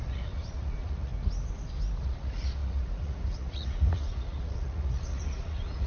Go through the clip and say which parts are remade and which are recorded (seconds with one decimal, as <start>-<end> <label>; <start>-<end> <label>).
0.0-1.1 remade; 1.1-2.0 recorded; 2.0-5.9 remade